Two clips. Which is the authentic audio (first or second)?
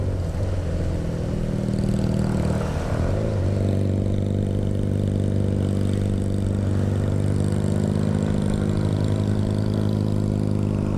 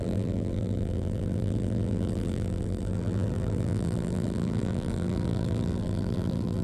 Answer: first